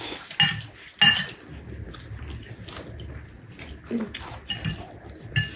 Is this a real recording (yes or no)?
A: yes